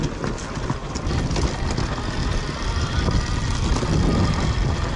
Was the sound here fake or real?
real